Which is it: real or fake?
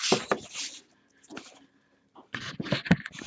real